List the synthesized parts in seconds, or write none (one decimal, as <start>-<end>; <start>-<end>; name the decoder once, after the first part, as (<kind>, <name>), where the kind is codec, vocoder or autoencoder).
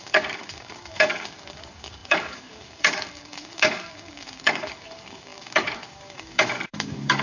0.0-7.2 (codec, DAC)